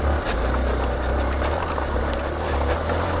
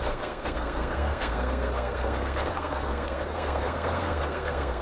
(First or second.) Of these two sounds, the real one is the first